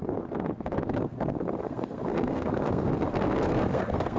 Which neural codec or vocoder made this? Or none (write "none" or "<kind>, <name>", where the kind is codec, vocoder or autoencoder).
codec, SNAC